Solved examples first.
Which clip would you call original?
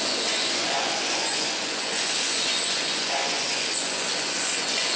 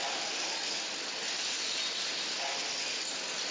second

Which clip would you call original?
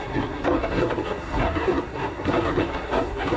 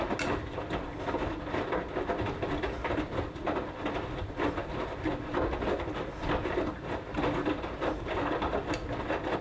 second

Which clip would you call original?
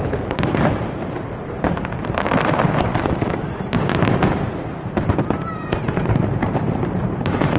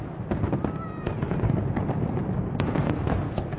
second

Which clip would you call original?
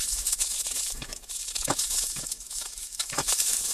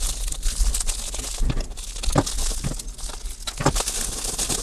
second